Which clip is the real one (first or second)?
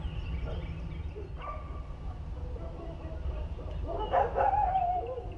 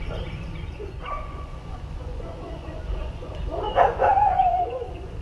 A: first